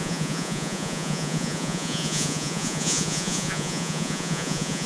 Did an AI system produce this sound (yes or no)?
yes